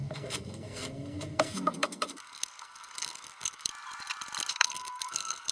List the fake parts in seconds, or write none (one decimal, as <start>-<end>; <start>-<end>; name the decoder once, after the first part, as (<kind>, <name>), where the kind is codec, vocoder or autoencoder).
0.0-3.7 (codec, SNAC); 4.5-5.5